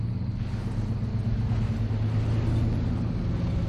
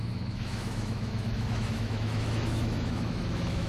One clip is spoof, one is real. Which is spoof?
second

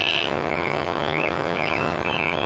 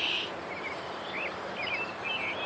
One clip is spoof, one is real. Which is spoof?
first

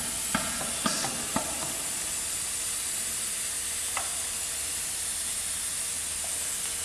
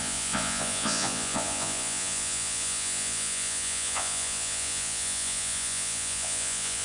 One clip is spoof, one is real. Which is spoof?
second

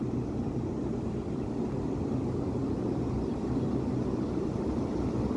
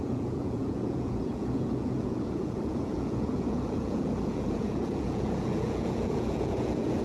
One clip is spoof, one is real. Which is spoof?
second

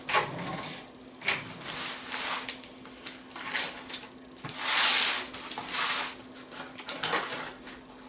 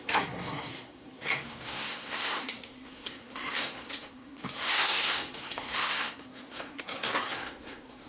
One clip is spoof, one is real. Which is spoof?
second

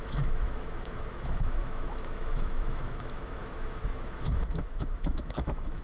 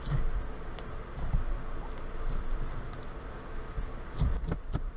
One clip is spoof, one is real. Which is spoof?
first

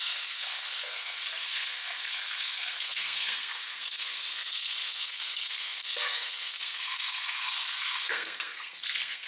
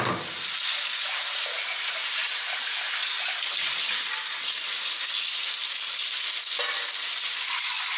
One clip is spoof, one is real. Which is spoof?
first